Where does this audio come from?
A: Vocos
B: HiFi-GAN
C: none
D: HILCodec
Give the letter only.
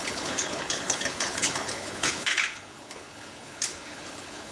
D